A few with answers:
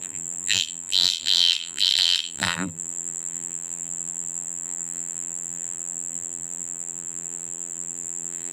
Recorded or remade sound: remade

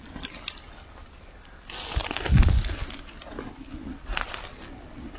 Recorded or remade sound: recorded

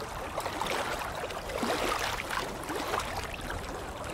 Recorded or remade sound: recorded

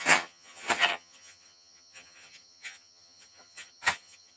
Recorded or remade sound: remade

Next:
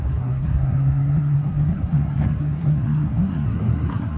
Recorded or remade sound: remade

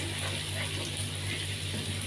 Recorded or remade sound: recorded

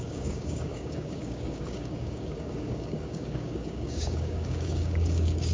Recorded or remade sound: remade